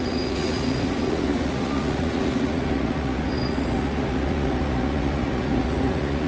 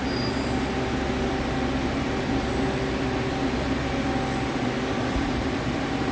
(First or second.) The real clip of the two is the second